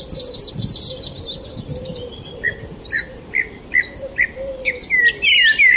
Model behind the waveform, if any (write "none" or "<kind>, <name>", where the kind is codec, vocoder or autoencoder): none